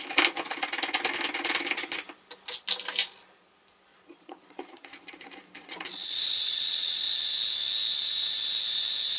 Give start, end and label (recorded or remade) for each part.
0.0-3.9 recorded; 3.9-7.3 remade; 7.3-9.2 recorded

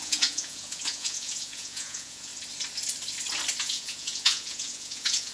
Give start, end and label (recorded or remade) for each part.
0.0-2.3 remade; 2.3-3.6 recorded; 3.6-5.3 remade